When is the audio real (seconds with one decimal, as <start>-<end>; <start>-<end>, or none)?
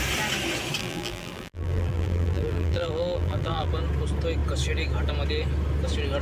0.0-0.8; 3.7-6.2